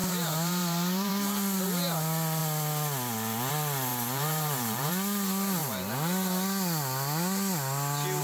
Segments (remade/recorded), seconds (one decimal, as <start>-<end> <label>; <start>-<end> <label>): 0.0-1.1 remade; 1.1-3.9 recorded; 3.9-4.9 remade; 4.9-8.2 recorded